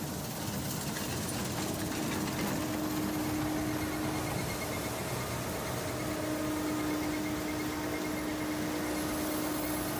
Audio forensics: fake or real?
real